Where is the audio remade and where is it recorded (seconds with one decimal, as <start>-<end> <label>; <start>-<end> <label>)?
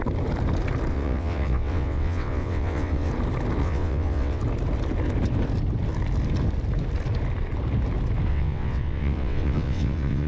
0.0-0.9 recorded; 0.9-3.1 remade; 3.1-3.6 recorded; 3.6-4.4 remade; 4.4-8.3 recorded; 8.3-10.3 remade